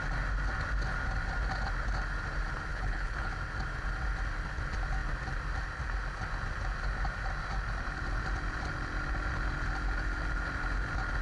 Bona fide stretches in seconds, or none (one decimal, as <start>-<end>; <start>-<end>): 0.0-2.7; 3.3-11.2